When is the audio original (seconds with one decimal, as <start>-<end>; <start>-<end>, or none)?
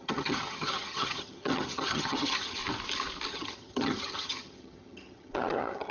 2.6-3.3